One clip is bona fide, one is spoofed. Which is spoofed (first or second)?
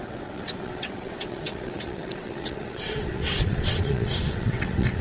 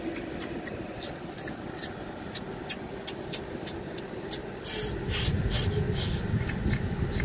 first